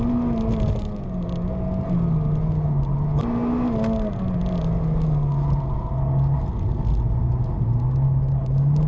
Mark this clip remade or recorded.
recorded